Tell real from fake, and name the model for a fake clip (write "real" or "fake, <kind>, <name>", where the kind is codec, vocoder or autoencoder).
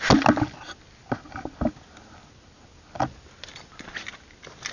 real